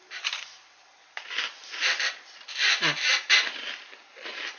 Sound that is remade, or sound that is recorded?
recorded